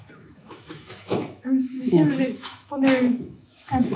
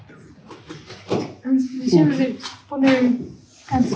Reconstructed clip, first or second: first